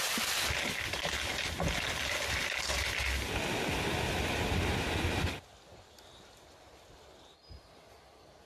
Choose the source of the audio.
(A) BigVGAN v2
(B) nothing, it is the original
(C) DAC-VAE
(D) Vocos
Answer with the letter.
B